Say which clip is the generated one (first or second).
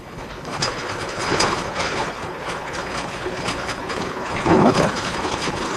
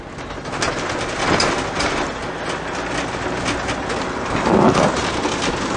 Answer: first